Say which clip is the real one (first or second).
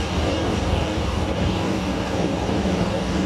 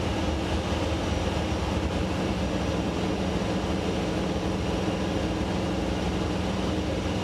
second